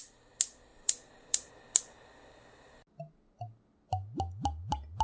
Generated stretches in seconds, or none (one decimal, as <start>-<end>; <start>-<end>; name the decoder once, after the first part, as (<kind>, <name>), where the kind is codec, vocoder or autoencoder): 0.7-1.5 (vocoder, BigVGAN v2)